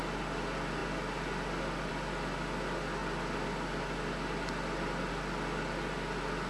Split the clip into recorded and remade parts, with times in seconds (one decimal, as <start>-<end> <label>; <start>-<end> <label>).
0.0-6.5 recorded